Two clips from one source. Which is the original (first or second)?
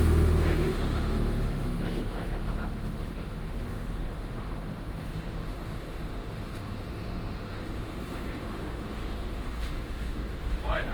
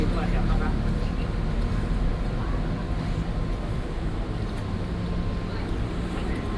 second